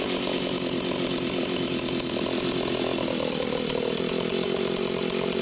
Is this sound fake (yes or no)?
no